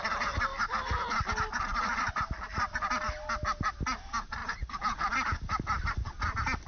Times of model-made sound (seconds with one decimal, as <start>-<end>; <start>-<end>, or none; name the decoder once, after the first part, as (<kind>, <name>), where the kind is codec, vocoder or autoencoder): none